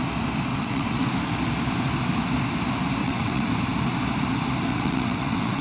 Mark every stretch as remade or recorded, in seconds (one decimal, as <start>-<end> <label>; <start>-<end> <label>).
0.0-0.5 recorded; 0.5-1.1 remade; 1.1-3.0 recorded; 3.0-3.5 remade; 3.5-4.7 recorded; 4.7-5.6 remade

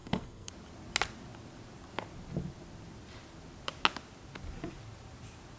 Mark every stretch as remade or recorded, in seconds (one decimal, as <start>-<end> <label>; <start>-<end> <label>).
0.0-0.5 remade; 0.5-5.6 recorded

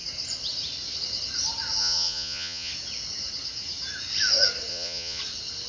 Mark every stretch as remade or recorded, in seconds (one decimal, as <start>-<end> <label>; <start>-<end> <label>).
0.0-1.8 recorded; 1.8-2.7 remade; 2.7-4.7 recorded; 4.7-5.2 remade; 5.2-5.7 recorded

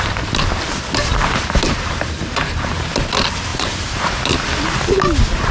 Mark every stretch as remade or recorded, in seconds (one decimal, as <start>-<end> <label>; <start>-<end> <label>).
0.0-1.1 recorded; 1.1-2.7 remade; 2.7-3.5 recorded; 3.5-4.1 remade; 4.1-5.5 recorded

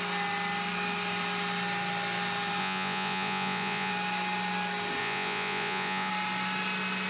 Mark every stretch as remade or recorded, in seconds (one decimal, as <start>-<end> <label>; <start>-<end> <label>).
0.0-2.6 recorded; 2.6-3.9 remade; 3.9-5.0 recorded; 5.0-6.1 remade; 6.1-7.1 recorded